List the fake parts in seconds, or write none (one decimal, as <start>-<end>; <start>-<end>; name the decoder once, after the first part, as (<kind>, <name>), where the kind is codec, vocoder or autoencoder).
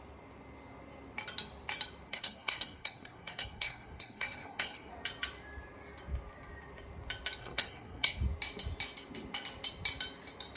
2.1-4.9 (codec, SNAC); 7.4-8.2